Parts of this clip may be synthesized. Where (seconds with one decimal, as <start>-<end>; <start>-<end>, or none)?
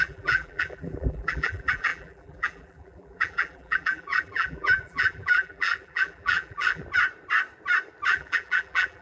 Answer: 0.0-6.8; 8.1-9.0